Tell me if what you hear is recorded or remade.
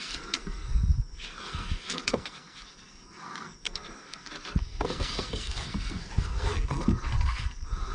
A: remade